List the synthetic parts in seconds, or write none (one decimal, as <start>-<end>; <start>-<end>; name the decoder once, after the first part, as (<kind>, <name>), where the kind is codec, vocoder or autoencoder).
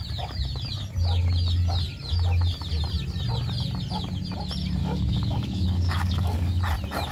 4.8-6.6 (codec, DAC)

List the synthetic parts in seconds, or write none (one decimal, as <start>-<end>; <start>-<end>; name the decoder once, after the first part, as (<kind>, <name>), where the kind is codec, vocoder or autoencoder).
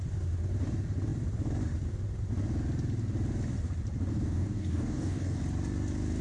4.1-5.4 (codec, DAC)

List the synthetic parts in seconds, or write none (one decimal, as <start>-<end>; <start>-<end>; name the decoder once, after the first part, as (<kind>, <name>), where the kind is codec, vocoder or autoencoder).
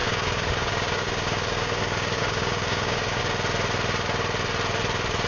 0.0-3.2 (codec, DAC)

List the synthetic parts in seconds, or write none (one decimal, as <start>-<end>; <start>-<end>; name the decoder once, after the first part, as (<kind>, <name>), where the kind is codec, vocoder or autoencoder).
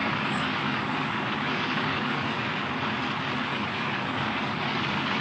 0.0-2.4 (codec, DAC); 3.5-5.2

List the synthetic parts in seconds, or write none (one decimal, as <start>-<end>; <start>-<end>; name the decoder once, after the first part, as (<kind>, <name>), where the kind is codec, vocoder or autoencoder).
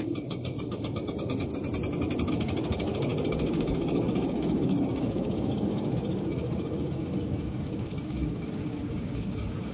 0.0-1.5 (codec, DAC); 2.3-9.7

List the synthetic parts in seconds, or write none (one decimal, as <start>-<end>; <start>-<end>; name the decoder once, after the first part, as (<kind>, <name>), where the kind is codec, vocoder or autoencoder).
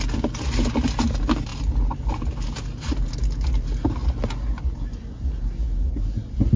none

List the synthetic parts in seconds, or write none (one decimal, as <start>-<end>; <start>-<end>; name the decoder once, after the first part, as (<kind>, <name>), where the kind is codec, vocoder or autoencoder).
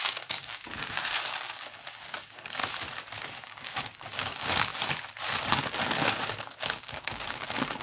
0.0-2.6 (codec, DAC); 3.2-4.7; 5.5-7.8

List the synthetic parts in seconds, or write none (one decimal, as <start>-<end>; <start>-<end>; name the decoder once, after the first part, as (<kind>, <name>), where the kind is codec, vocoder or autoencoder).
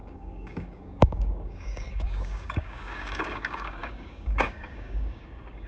0.0-5.7 (codec, DAC)